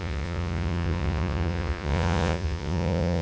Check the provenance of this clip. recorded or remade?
remade